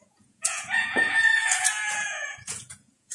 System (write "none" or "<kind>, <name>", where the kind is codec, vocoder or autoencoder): vocoder, Vocos